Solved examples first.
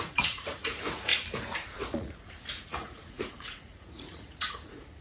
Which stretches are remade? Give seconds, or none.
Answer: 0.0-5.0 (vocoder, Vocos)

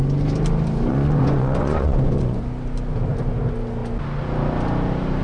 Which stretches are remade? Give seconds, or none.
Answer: 0.9-2.4 (vocoder, Vocos)

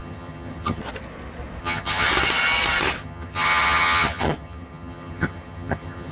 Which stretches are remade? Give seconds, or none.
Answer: 0.0-0.8 (vocoder, HiFi-GAN); 1.6-2.1; 3.0-6.1

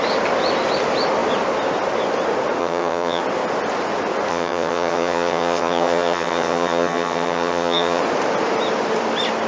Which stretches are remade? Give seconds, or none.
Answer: 2.6-3.2 (vocoder, HiFi-GAN); 4.3-8.0

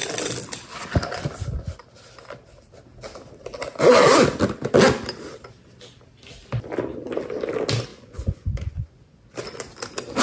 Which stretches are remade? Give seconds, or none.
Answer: 7.9-9.2 (vocoder, Vocos)